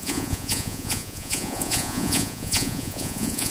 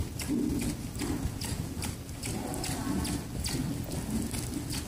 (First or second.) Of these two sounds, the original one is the second